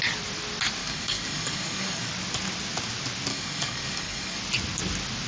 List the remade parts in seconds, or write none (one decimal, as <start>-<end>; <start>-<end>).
0.8-2.1; 3.3-4.4